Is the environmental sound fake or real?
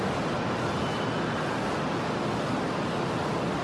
real